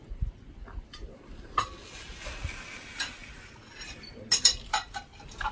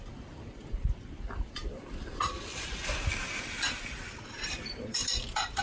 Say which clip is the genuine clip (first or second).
first